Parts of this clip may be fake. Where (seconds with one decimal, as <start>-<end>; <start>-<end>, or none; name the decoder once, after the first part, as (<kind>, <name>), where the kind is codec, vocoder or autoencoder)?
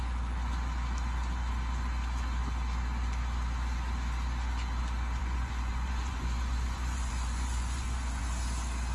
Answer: 5.2-8.2 (vocoder, Vocos)